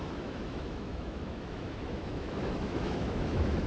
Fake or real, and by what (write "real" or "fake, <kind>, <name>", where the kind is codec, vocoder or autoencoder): fake, autoencoder, DAC-VAE